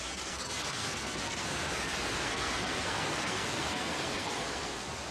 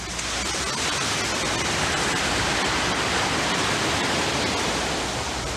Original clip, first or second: second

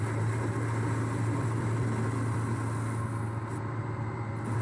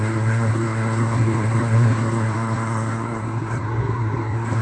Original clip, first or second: first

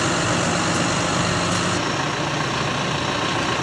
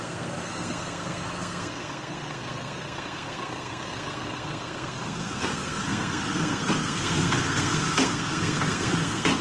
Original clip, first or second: first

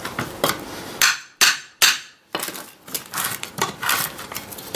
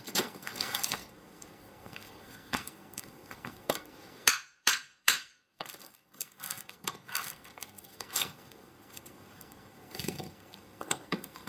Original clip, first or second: first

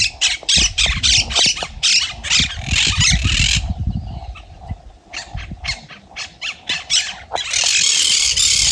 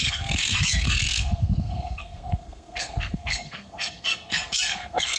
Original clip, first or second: first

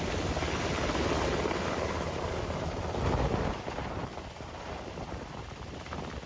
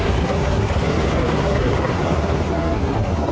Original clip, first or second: first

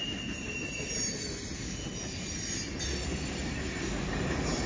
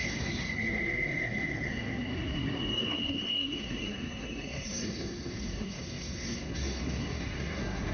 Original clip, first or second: first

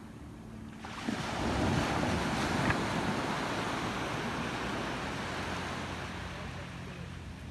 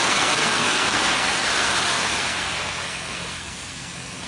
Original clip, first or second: first